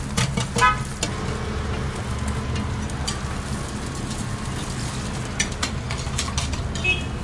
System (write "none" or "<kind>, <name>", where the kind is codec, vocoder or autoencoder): none